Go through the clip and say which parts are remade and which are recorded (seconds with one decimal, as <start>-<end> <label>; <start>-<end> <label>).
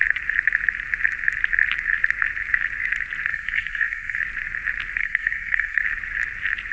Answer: 0.0-3.3 recorded; 3.3-4.2 remade; 4.2-5.0 recorded; 5.0-5.8 remade; 5.8-6.7 recorded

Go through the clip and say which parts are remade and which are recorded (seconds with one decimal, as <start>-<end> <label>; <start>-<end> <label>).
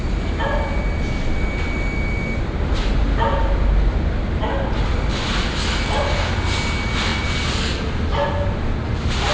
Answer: 0.0-7.1 recorded; 7.1-7.8 remade; 7.8-9.3 recorded